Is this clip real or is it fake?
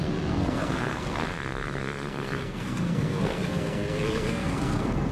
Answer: fake